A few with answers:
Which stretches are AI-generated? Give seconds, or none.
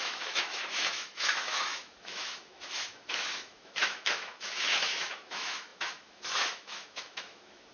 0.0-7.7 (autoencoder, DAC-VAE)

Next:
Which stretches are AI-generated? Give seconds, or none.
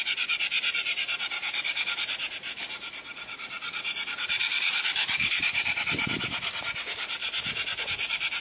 2.2-5.8 (vocoder, BigVGAN v2)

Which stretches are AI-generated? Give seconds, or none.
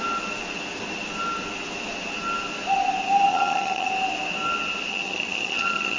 3.3-3.9 (vocoder, HiFi-GAN); 4.9-6.0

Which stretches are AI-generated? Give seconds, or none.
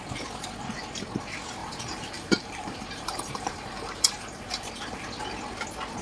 1.6-4.7 (vocoder, BigVGAN v2)